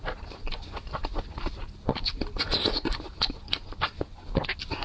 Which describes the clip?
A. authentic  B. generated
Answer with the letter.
A